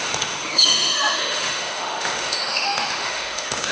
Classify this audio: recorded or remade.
remade